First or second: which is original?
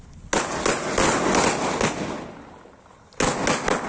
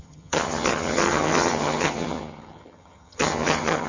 first